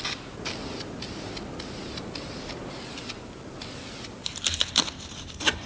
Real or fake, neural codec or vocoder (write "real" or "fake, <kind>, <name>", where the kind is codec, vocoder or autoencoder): real